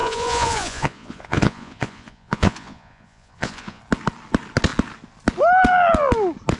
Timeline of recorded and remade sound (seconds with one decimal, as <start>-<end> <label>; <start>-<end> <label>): 0.0-3.8 remade; 3.8-6.6 recorded